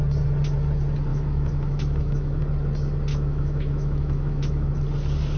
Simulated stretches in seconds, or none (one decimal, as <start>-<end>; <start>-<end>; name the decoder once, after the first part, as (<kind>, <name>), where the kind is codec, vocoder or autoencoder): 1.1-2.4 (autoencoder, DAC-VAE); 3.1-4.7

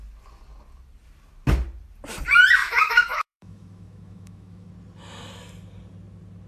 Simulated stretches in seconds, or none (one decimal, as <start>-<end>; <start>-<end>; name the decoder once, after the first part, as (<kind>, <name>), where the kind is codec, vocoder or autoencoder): 2.6-4.7 (autoencoder, DAC-VAE)

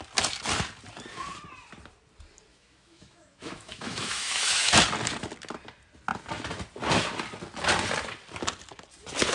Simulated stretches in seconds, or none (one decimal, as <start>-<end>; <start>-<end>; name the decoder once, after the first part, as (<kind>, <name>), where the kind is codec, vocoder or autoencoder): 2.5-4.8 (autoencoder, DAC-VAE)